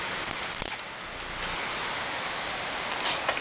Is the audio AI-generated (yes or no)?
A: no